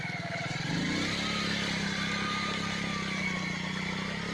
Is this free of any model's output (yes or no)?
yes